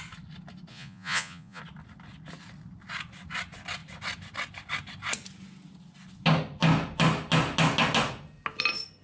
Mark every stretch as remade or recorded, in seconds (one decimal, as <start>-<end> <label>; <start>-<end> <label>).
0.0-0.7 recorded; 0.7-1.6 remade; 1.6-9.0 recorded